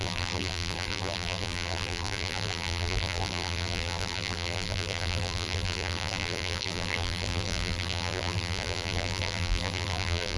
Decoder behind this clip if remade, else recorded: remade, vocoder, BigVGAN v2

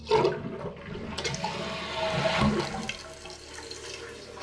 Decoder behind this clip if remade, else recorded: recorded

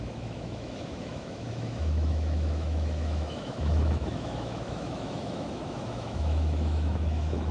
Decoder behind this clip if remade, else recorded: remade, autoencoder, DAC-VAE